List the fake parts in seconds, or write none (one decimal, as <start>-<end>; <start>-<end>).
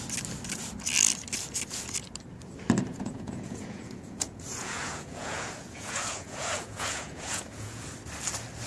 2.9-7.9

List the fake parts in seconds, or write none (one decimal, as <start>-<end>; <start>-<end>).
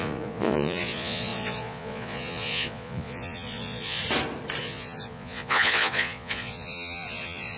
0.0-4.0; 4.6-7.6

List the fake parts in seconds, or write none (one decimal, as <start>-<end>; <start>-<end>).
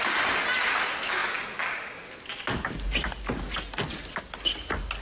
none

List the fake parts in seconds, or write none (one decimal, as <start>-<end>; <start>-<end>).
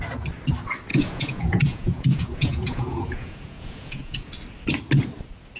0.9-4.3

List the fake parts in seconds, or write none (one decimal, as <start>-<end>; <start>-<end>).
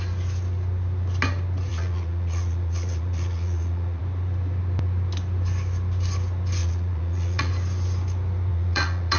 1.7-4.0; 6.6-7.5; 8.5-9.2